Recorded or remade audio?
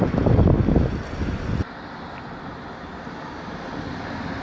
recorded